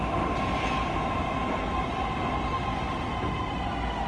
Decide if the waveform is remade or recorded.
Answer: recorded